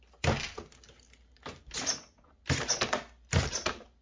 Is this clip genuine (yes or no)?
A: yes